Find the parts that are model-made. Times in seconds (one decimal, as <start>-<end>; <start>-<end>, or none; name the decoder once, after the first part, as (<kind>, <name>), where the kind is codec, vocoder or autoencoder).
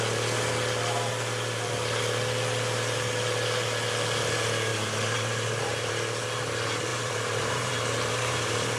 4.7-5.9 (vocoder, BigVGAN v2); 6.9-8.8